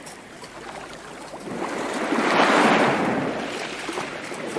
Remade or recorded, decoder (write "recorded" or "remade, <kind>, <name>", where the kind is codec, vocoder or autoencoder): recorded